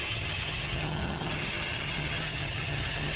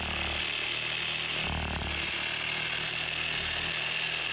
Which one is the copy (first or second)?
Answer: first